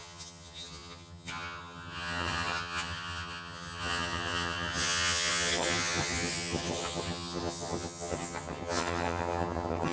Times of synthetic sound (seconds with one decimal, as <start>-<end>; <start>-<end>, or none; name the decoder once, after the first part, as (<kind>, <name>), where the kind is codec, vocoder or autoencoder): 0.0-9.9 (vocoder, HiFi-GAN)

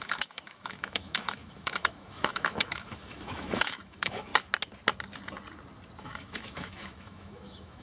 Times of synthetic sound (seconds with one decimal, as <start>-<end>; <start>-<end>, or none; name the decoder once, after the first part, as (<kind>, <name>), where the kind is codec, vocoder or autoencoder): 0.0-4.3 (autoencoder, DAC-VAE); 6.0-7.8

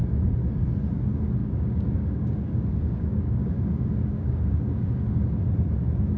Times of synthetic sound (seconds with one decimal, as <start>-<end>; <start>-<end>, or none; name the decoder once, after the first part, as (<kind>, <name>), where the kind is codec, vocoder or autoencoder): 1.4-5.1 (codec, DAC)

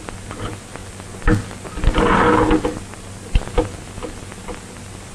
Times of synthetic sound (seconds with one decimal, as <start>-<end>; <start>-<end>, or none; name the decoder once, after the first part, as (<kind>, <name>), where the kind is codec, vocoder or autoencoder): none

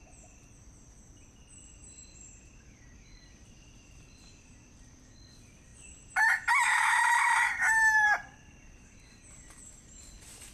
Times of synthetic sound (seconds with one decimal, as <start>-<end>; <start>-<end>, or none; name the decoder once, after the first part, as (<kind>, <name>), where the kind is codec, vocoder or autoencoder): 0.0-10.5 (vocoder, BigVGAN v2)

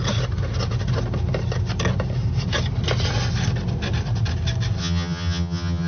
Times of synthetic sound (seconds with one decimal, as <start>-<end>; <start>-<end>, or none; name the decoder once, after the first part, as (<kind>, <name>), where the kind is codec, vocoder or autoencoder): 4.8-5.9 (vocoder, HiFi-GAN)